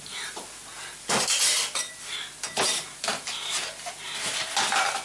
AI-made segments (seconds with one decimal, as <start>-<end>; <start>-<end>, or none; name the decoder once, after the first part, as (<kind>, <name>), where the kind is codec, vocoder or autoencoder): none